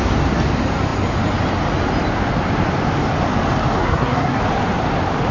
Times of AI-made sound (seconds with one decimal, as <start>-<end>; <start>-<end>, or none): 3.8-4.4